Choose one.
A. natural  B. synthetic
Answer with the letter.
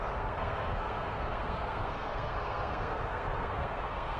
B